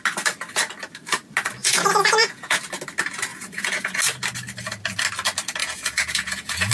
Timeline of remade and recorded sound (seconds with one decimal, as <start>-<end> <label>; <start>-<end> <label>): 0.0-1.6 recorded; 1.6-2.6 remade; 2.6-3.3 recorded; 3.3-4.0 remade; 4.0-5.6 recorded; 5.6-6.7 remade